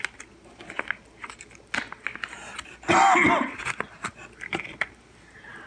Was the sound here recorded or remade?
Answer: recorded